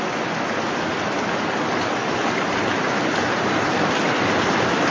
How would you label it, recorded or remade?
recorded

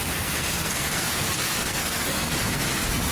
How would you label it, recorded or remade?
remade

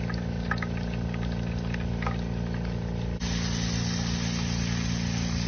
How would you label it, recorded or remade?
recorded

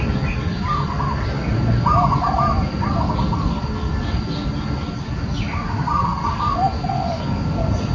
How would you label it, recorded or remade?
recorded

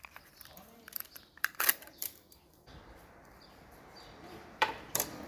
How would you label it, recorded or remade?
remade